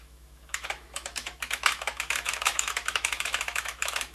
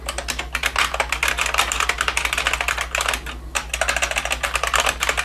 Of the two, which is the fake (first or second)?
first